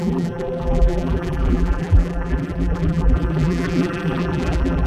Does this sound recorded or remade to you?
remade